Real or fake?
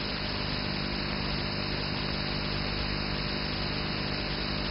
real